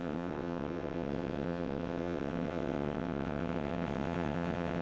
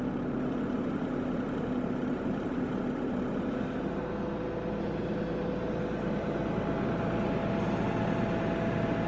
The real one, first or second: second